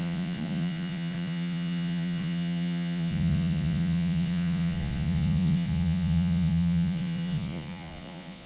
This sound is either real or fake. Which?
fake